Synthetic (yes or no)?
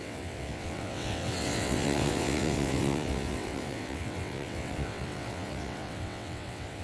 yes